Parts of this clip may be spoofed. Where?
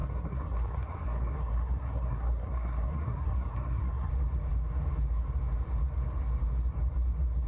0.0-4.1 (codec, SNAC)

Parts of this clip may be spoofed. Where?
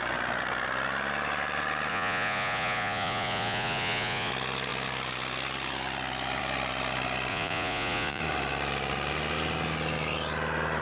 1.9-4.3 (vocoder, Vocos); 7.3-8.2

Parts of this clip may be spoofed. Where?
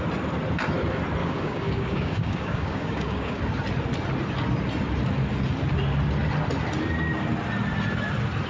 1.2-3.4 (codec, DAC)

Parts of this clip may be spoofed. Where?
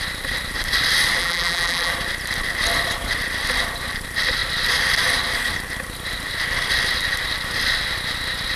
1.2-1.9 (vocoder, BigVGAN v2)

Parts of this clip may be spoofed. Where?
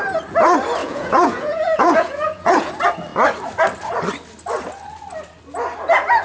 0.8-2.7 (vocoder, Vocos)